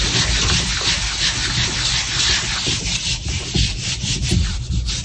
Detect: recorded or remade recorded